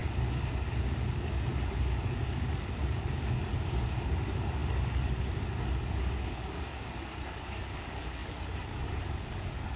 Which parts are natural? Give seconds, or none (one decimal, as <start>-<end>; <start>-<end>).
none